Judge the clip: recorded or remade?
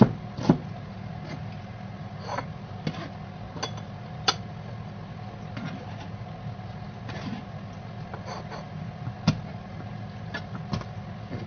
recorded